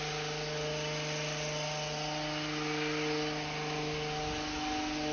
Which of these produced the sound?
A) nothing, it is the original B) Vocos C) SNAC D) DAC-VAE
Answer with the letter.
A